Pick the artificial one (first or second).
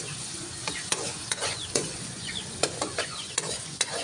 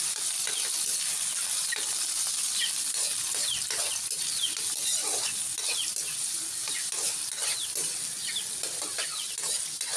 first